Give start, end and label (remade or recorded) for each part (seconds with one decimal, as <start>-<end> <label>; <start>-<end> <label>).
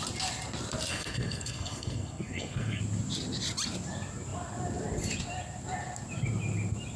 0.0-0.9 recorded; 0.9-2.8 remade; 2.8-7.0 recorded